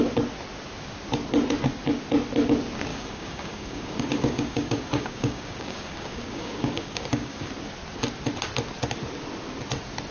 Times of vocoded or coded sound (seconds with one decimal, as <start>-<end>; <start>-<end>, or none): 2.9-7.5